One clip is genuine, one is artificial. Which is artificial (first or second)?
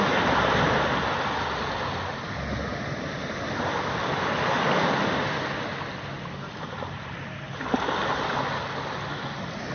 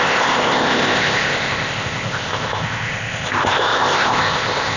second